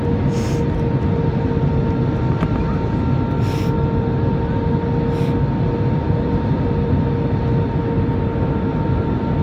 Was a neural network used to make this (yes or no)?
no